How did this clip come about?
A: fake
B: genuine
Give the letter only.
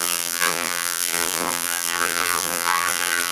A